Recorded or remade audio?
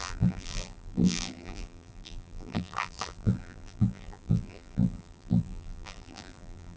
remade